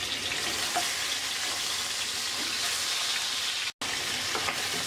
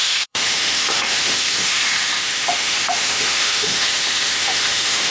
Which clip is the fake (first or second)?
second